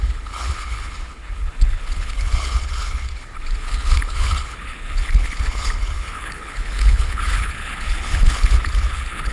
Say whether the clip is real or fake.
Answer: fake